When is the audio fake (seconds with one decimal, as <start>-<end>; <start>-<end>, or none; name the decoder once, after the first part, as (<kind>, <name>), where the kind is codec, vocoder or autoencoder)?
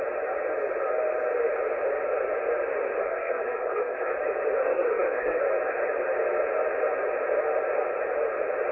3.0-4.1 (codec, SNAC); 4.6-5.4